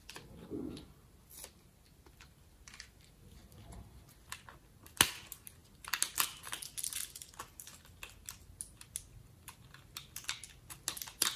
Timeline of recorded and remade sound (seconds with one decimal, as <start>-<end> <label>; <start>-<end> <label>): 0.0-0.8 remade; 0.8-11.4 recorded